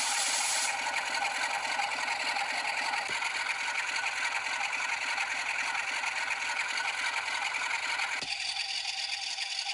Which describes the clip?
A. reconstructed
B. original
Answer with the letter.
B